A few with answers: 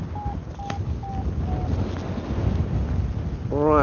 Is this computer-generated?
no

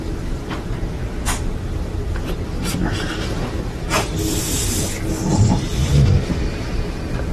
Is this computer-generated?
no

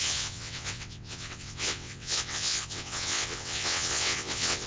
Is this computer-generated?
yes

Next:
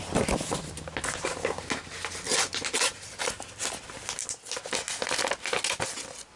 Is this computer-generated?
no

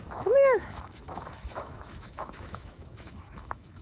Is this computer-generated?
yes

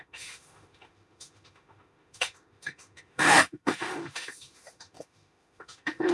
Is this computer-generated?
yes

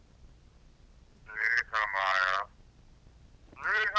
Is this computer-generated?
no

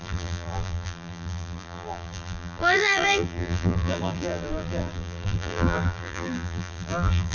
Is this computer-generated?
yes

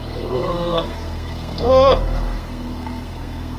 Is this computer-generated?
yes